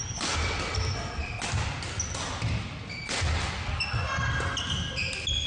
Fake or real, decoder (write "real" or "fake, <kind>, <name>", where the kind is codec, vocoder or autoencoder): real